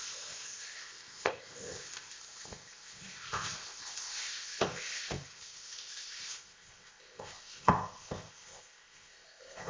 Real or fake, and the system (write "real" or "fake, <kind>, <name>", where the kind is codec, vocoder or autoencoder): fake, codec, ZipCodec